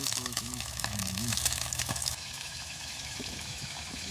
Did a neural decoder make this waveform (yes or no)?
yes